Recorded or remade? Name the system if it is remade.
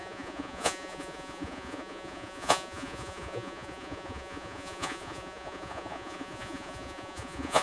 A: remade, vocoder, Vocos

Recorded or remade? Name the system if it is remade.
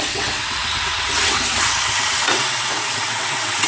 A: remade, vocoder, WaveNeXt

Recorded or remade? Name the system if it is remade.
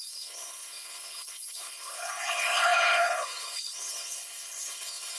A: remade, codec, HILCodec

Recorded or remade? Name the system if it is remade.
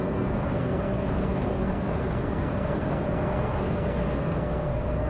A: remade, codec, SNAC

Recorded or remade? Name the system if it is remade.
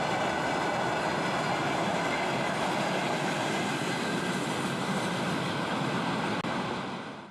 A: recorded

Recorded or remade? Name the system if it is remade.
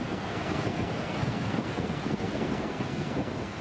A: remade, codec, SNAC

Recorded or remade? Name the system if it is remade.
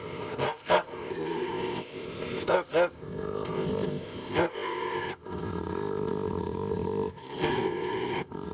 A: remade, codec, ZipCodec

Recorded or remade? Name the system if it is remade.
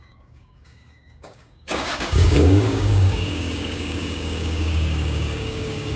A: remade, codec, DAC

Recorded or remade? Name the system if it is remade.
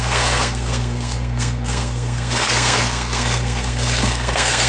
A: remade, codec, SNAC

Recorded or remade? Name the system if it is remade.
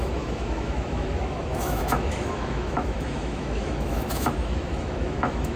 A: remade, autoencoder, DAC-VAE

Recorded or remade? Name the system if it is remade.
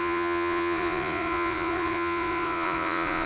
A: remade, vocoder, Vocos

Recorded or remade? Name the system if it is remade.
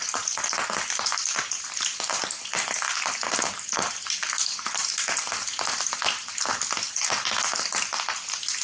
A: recorded